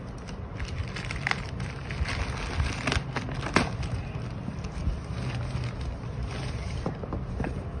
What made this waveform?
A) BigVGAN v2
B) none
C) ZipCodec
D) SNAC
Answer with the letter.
B